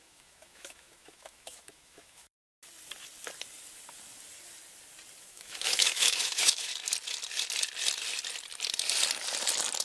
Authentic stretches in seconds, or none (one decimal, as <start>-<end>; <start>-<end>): 2.4-5.2; 6.7-9.8